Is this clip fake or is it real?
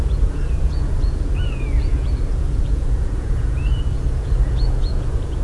fake